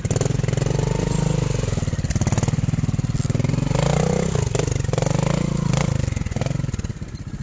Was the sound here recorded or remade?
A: recorded